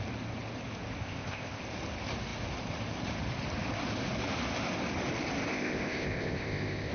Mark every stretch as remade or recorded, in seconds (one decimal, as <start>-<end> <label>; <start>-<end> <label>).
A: 0.0-1.0 recorded; 1.0-1.6 remade; 1.6-5.5 recorded; 5.5-6.9 remade